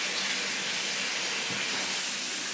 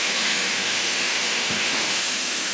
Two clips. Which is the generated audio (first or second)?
second